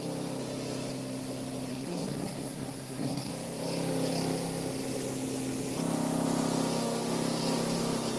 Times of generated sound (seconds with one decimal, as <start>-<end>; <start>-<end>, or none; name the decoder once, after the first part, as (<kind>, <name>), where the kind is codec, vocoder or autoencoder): 1.7-3.3 (codec, SNAC)